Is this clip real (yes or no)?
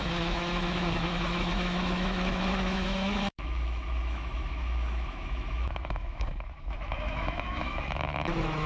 no